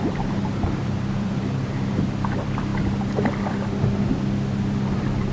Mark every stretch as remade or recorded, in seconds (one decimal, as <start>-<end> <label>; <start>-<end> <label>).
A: 0.0-2.7 remade; 2.7-3.5 recorded; 3.5-5.3 remade